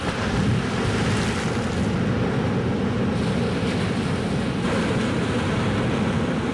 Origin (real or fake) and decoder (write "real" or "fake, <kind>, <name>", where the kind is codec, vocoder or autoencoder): real